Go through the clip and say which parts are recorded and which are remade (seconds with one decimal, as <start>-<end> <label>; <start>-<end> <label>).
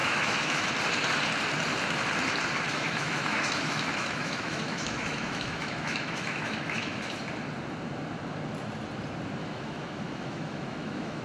0.0-0.7 remade; 0.7-2.7 recorded; 2.7-7.1 remade; 7.1-9.4 recorded; 9.4-11.2 remade